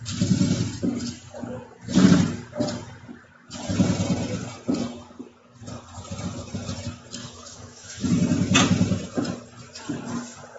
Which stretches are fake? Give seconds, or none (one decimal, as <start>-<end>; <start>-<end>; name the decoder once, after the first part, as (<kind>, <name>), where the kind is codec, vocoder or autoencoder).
7.2-8.1 (autoencoder, DAC-VAE)